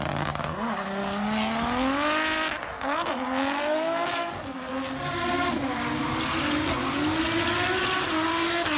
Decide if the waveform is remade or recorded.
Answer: recorded